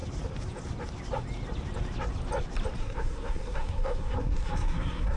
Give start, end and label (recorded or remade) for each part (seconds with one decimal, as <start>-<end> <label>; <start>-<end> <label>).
0.0-2.8 recorded; 2.8-5.2 remade